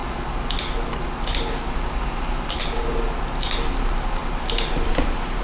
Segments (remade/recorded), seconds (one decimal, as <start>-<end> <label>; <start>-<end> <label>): 0.0-5.4 recorded